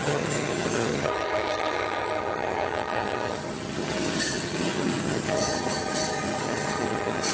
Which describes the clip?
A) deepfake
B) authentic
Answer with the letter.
A